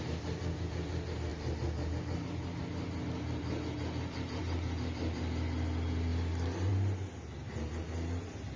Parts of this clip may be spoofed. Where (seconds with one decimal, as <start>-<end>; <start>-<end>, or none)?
none